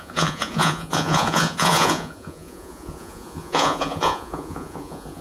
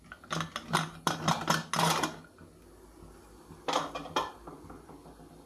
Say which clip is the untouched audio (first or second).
second